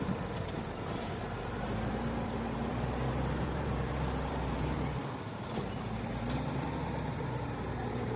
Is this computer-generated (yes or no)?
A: yes